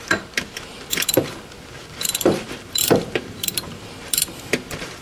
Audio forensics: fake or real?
fake